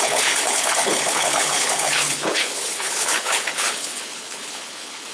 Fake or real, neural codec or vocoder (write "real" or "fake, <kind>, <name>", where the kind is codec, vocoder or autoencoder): fake, codec, HILCodec